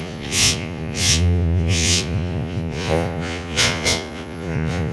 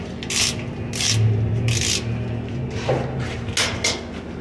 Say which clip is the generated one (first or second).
first